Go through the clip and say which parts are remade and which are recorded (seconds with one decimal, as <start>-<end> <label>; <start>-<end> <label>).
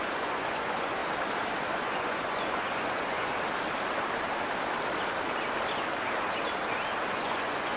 0.0-1.0 remade; 1.0-1.7 recorded; 1.7-3.3 remade; 3.3-7.1 recorded; 7.1-7.8 remade